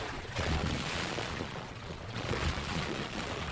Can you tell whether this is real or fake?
fake